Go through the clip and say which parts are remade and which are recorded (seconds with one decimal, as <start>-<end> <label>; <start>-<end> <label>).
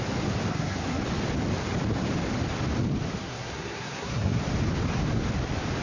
0.0-0.5 recorded; 0.5-1.0 remade; 1.0-3.2 recorded; 3.2-4.4 remade; 4.4-5.8 recorded